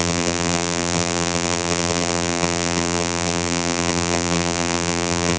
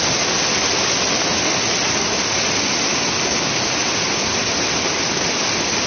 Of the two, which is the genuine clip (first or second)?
second